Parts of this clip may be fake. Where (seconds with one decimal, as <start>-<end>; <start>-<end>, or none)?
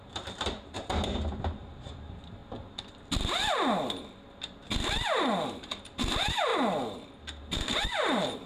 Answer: 0.0-2.4; 4.9-6.5; 7.4-8.5